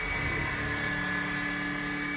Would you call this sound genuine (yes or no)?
yes